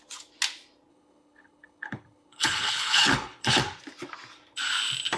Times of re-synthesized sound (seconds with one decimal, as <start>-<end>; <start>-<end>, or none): 0.9-3.6